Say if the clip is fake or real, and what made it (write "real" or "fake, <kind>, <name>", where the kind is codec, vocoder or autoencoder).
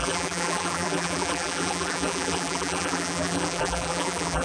fake, vocoder, BigVGAN v2